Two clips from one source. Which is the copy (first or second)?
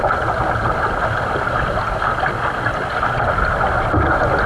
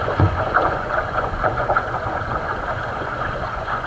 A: second